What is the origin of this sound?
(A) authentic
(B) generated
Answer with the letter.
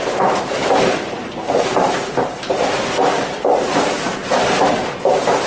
B